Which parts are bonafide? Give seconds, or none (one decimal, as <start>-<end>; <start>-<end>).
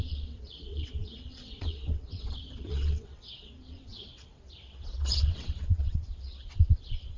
none